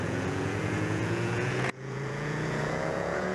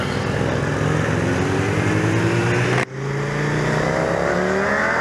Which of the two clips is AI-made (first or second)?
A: first